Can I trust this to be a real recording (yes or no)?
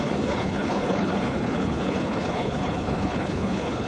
no